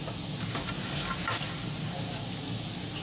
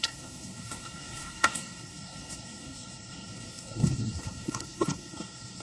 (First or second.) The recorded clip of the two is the first